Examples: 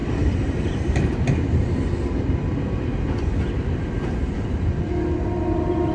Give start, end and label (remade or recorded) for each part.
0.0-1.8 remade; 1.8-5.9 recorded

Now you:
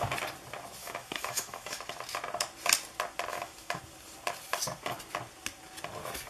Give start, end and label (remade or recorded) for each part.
0.0-0.8 recorded; 0.8-1.8 remade; 1.8-3.3 recorded; 3.3-3.8 remade; 3.8-6.3 recorded